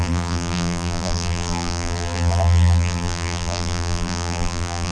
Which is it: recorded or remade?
remade